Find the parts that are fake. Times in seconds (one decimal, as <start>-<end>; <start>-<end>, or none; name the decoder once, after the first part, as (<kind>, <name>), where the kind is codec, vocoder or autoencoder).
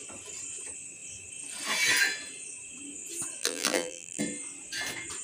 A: 3.4-4.2 (vocoder, BigVGAN v2)